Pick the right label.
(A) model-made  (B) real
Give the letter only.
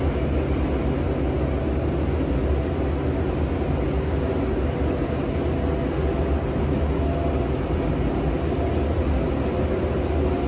B